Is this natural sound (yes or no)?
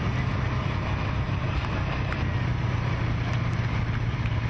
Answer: yes